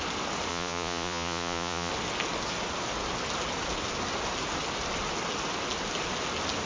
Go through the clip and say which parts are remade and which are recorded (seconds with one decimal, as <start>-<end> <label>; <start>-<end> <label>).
0.0-0.5 recorded; 0.5-1.9 remade; 1.9-6.7 recorded